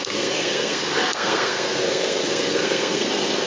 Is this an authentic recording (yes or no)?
no